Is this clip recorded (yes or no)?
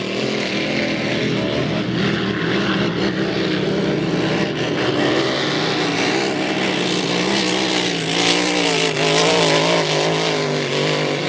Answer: yes